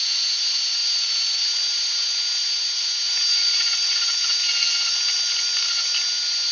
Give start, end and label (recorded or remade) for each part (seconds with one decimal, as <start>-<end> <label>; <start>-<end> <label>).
0.0-6.5 recorded